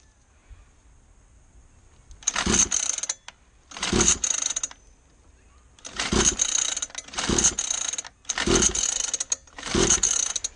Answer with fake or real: real